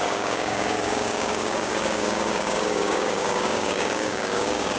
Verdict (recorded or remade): remade